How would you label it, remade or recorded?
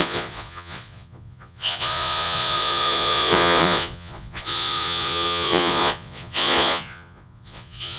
remade